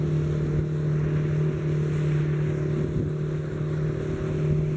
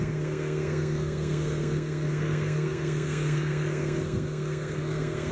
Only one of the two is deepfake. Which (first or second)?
second